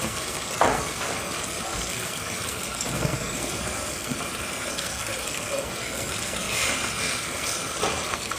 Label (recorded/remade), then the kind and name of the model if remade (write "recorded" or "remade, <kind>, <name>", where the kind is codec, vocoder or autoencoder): remade, codec, SNAC